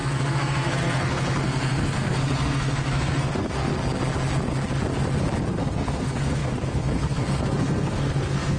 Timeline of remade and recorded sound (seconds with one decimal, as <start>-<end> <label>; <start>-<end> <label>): 0.0-3.7 remade; 3.7-5.5 recorded; 5.5-8.6 remade